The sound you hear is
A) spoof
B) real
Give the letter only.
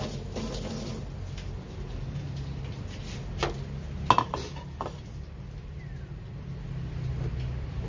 B